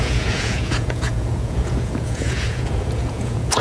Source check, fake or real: fake